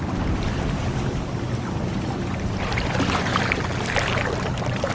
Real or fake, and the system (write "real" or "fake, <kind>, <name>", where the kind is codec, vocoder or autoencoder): fake, vocoder, BigVGAN v2